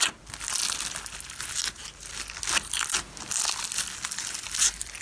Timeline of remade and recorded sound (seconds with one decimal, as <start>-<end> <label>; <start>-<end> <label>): 0.0-0.6 remade; 0.6-3.6 recorded; 3.6-5.0 remade